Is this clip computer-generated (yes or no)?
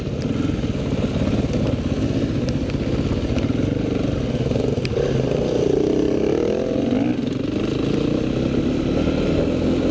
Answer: no